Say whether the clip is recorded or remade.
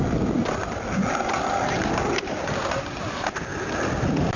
recorded